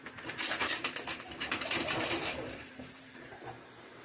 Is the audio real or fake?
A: fake